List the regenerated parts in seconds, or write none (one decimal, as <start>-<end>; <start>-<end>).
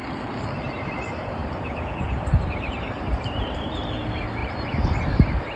1.4-3.9; 4.4-5.6